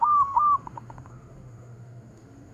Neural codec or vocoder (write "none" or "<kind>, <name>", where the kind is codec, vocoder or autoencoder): autoencoder, DAC-VAE